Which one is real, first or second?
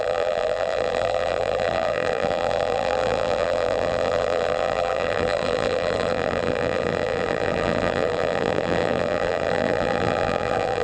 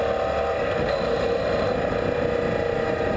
second